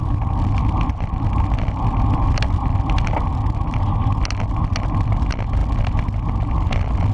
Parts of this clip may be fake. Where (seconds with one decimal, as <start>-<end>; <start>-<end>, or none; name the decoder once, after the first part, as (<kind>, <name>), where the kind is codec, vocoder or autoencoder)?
none